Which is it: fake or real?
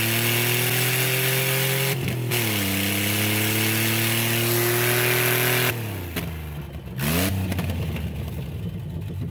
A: real